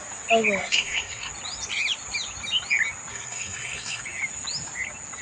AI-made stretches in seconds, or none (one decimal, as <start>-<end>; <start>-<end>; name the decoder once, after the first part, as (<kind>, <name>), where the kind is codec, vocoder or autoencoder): 0.6-1.3 (codec, SNAC); 3.1-4.0